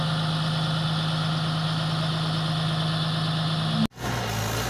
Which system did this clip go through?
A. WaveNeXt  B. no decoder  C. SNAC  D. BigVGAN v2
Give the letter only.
B